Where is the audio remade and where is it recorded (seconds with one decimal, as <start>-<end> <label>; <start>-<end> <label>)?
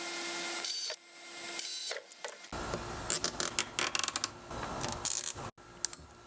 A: 0.0-6.3 recorded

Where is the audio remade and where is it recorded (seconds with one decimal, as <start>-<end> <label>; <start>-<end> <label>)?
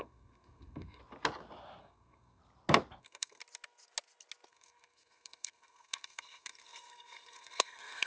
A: 0.0-1.0 remade; 1.0-1.8 recorded; 1.8-2.4 remade; 2.4-3.0 recorded; 3.0-3.4 remade; 3.4-4.5 recorded; 4.5-8.1 remade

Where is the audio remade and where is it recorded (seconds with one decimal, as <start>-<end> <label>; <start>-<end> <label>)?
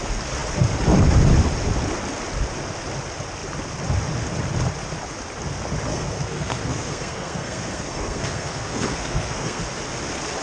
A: 0.0-5.9 recorded; 5.9-9.6 remade; 9.6-10.4 recorded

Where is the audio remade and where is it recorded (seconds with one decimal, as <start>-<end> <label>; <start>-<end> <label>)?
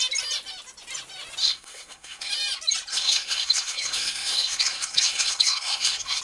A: 0.0-1.4 recorded; 1.4-2.3 remade; 2.3-2.9 recorded; 2.9-6.2 remade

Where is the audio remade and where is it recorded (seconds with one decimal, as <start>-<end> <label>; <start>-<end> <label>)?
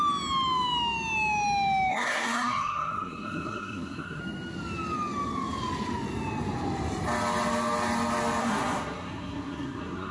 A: 0.0-1.9 recorded; 1.9-4.2 remade; 4.2-8.4 recorded; 8.4-10.1 remade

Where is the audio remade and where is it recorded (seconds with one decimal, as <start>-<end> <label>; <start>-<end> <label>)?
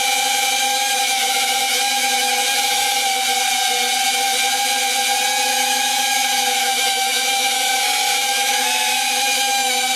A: 0.0-0.7 recorded; 0.7-3.0 remade; 3.0-5.5 recorded; 5.5-10.0 remade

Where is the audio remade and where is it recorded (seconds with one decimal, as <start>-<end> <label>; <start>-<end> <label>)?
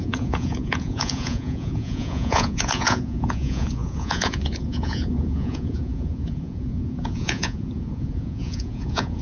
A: 0.0-9.2 remade